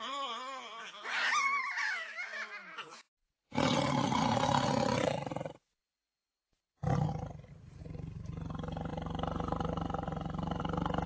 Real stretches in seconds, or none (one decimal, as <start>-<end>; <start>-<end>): 0.0-3.2; 5.8-11.1